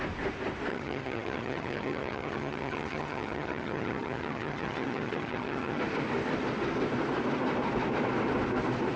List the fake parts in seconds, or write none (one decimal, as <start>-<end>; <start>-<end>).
0.7-5.8